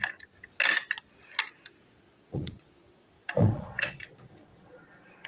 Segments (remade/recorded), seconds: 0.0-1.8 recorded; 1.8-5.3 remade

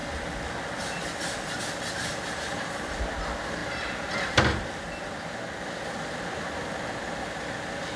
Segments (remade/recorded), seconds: 0.0-8.0 recorded

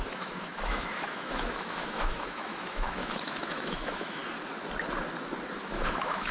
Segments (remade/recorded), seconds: 0.0-4.2 remade; 4.2-5.5 recorded; 5.5-6.3 remade

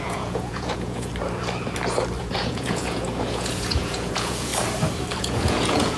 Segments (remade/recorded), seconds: 0.0-1.1 remade; 1.1-2.2 recorded; 2.2-4.5 remade; 4.5-5.2 recorded; 5.2-6.0 remade

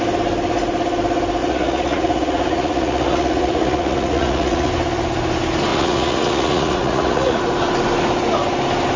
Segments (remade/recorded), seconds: 0.0-1.4 recorded; 1.4-4.7 remade; 4.7-5.7 recorded; 5.7-7.4 remade; 7.4-9.0 recorded

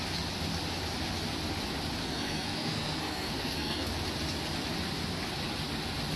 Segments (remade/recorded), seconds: 0.0-2.0 recorded; 2.0-3.9 remade; 3.9-6.2 recorded

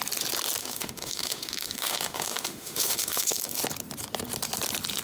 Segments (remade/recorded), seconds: 0.0-0.6 recorded; 0.6-3.6 remade; 3.6-5.0 recorded

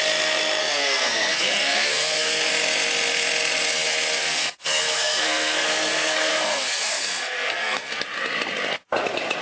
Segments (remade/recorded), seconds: 0.0-0.6 recorded; 0.6-2.5 remade; 2.5-4.2 recorded; 4.2-8.0 remade; 8.0-9.4 recorded